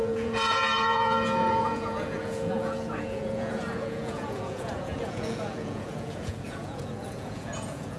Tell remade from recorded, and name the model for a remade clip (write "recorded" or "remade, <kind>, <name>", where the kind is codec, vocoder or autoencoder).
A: remade, vocoder, Vocos